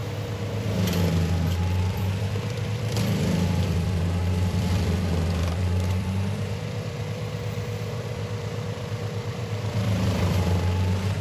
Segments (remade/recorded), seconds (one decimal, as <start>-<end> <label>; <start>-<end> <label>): 0.0-1.8 recorded; 1.8-11.2 remade